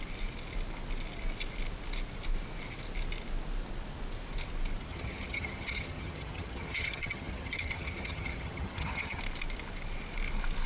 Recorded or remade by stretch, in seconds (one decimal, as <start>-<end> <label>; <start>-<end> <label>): 0.0-4.9 recorded; 4.9-9.2 remade; 9.2-10.7 recorded